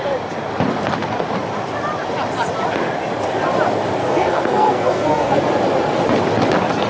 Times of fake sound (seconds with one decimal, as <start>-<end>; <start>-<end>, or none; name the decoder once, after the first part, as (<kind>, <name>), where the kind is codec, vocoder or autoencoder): 4.0-5.4 (codec, SNAC)